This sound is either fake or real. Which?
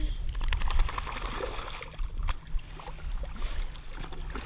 real